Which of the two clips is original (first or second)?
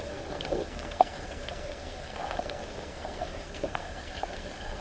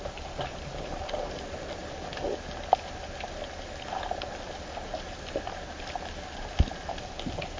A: second